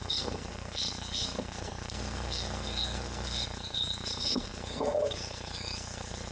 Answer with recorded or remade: remade